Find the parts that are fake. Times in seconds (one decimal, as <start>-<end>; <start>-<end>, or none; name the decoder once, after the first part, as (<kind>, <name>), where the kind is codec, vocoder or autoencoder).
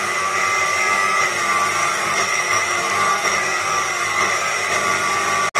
0.7-1.2 (codec, DAC); 1.8-4.3